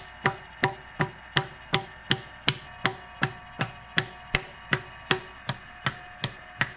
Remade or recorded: recorded